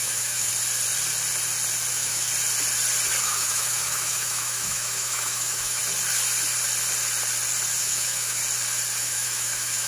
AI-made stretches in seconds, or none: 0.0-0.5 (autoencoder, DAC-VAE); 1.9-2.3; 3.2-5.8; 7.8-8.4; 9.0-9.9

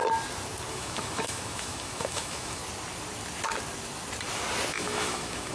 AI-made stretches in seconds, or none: 0.7-2.6 (autoencoder, DAC-VAE); 4.7-5.5

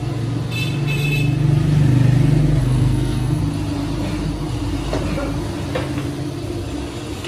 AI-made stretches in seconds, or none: 2.6-3.4 (codec, SNAC)

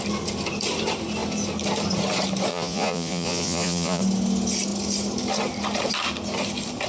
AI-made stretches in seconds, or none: 2.5-4.0 (vocoder, Vocos)

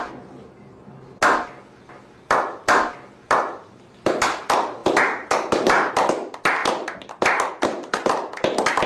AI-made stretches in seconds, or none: 4.8-5.9 (vocoder, BigVGAN v2); 6.6-7.5